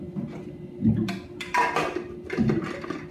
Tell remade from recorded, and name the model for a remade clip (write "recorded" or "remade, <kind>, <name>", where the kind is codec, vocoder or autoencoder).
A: recorded